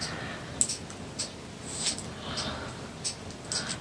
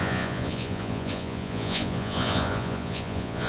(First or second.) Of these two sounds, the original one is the first